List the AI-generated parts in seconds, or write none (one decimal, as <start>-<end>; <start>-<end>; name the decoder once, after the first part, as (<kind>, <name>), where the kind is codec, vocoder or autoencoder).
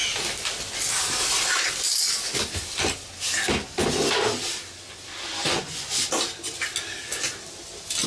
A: 5.3-6.1 (vocoder, Vocos)